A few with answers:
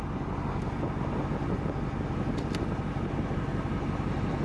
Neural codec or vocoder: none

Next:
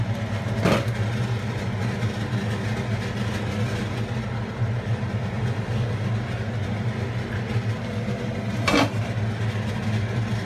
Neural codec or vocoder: none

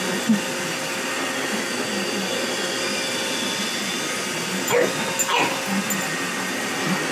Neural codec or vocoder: none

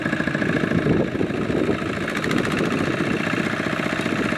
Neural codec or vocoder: none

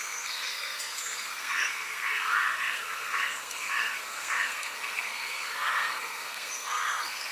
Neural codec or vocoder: codec, SNAC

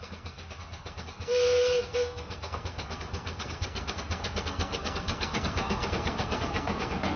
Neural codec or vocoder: codec, SNAC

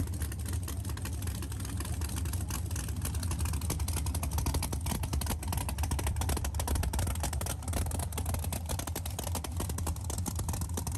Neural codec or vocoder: none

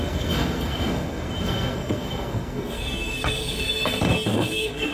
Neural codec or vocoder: codec, SNAC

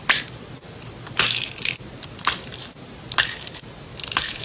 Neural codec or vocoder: none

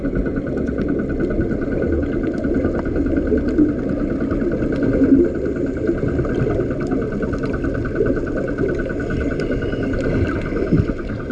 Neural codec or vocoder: none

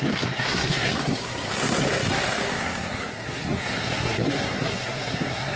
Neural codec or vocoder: codec, SNAC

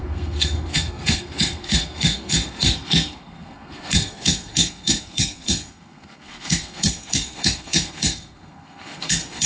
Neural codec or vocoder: codec, SNAC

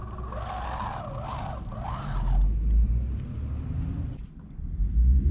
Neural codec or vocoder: none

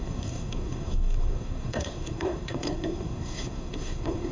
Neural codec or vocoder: codec, SNAC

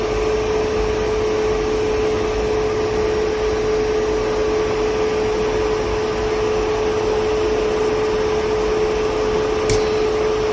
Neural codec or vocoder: none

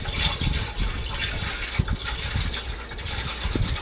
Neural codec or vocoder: none